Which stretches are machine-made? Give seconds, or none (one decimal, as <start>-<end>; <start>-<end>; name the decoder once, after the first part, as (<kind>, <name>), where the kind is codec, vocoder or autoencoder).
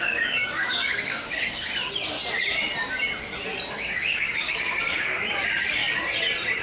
0.0-1.7 (codec, DAC); 3.7-5.8